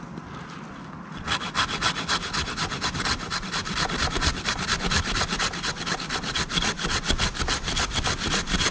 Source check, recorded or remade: recorded